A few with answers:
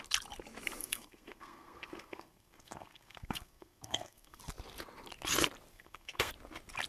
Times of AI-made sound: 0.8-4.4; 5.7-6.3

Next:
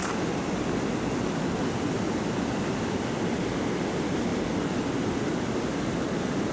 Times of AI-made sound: none

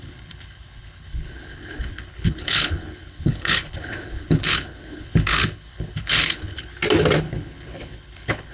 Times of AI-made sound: 0.0-6.7; 7.2-8.5

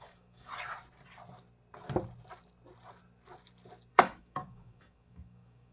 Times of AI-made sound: 0.0-0.5; 3.9-5.7